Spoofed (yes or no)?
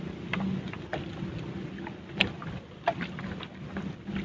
no